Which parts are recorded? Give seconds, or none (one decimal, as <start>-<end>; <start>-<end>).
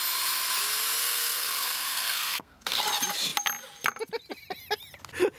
0.0-1.0; 2.8-5.4